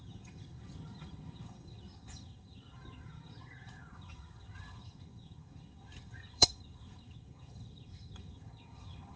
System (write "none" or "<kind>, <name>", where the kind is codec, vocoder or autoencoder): vocoder, HiFi-GAN